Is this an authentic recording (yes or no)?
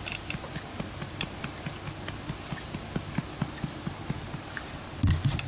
yes